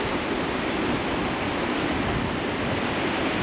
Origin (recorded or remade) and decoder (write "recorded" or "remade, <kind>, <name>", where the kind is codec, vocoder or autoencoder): recorded